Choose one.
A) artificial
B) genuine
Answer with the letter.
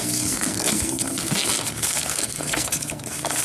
A